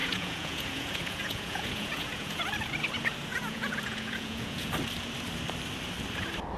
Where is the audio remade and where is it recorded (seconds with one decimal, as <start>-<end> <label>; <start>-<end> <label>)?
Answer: 0.0-2.4 remade; 2.4-3.3 recorded; 3.3-4.7 remade; 4.7-6.6 recorded